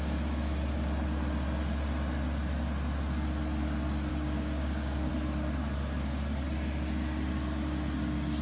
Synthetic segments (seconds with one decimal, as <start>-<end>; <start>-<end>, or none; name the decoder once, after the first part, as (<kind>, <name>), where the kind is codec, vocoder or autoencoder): 4.1-5.1 (codec, DAC)